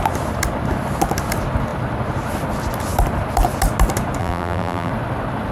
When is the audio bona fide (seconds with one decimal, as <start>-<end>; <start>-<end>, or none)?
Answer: 0.0-4.2; 4.9-5.5